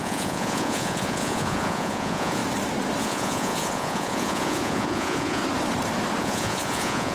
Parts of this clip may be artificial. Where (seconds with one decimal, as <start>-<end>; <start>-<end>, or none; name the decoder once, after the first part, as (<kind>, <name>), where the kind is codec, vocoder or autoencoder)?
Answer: 0.0-2.4 (vocoder, Vocos); 3.0-5.4; 6.2-7.1